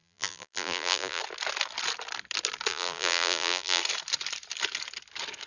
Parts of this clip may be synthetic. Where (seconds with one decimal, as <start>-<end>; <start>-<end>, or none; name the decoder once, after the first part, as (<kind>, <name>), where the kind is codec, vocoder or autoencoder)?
0.0-1.2 (vocoder, BigVGAN v2); 2.7-3.8